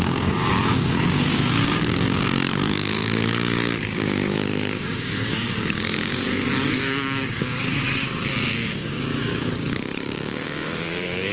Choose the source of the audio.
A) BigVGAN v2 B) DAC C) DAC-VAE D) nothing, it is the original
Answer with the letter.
B